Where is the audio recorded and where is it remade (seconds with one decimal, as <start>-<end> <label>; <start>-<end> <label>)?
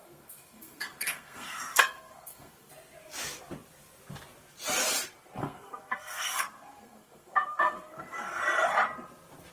0.0-2.7 remade; 2.7-5.4 recorded; 5.4-8.4 remade; 8.4-9.5 recorded